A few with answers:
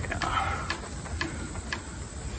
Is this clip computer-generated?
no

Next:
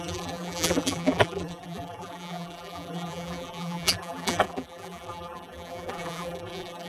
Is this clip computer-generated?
yes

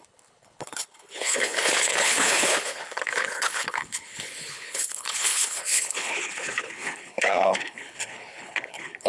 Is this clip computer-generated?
yes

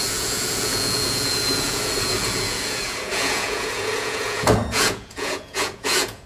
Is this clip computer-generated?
yes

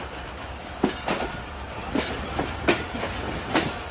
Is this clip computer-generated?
no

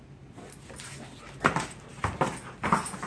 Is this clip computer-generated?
no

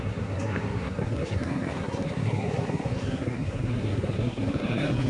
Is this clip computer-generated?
yes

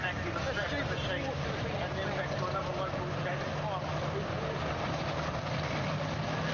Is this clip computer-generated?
no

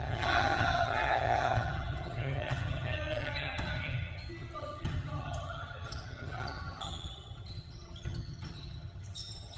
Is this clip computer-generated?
yes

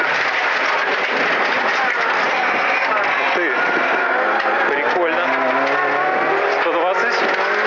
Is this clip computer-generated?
no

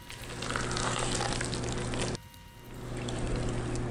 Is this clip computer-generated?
no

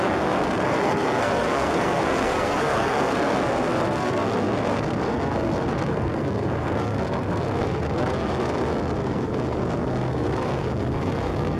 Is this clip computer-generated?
yes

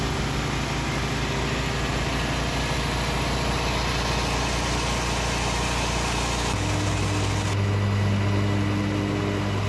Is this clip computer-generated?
no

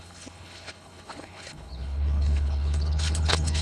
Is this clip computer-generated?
yes